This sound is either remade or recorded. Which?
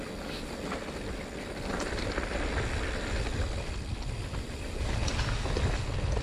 recorded